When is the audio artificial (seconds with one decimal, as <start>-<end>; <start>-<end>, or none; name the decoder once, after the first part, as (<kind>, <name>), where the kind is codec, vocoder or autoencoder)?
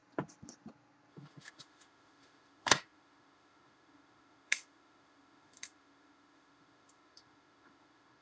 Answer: 1.1-8.2 (autoencoder, DAC-VAE)